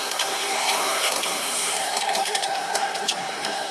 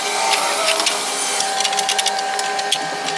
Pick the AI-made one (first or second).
first